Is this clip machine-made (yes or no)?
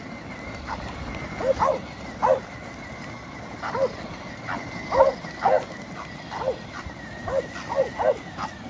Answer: no